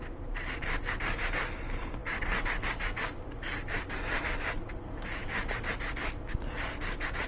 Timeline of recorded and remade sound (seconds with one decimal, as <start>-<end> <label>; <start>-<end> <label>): 0.0-7.3 recorded